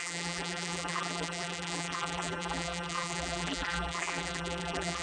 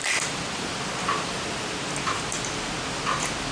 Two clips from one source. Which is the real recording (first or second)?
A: second